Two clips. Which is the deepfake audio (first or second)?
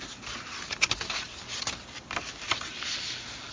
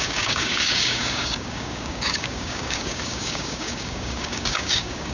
second